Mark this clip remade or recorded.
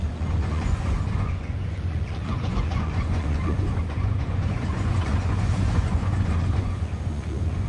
remade